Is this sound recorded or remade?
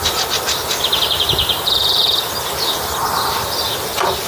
recorded